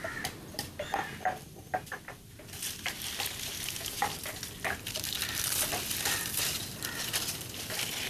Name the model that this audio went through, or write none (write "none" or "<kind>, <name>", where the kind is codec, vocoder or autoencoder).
vocoder, BigVGAN v2